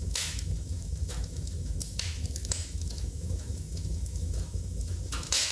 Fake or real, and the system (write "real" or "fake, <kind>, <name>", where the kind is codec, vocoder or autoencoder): fake, autoencoder, DAC-VAE